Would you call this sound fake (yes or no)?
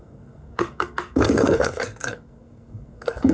yes